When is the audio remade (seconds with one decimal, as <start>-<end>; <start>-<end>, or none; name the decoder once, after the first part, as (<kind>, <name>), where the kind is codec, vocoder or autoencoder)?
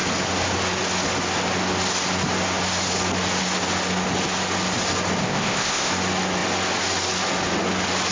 5.2-5.9 (codec, ZipCodec)